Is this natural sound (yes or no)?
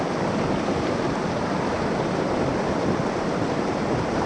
yes